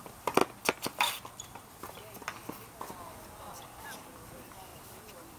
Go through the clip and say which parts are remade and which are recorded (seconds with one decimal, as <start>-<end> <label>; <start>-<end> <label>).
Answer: 0.0-4.7 recorded; 4.7-5.4 remade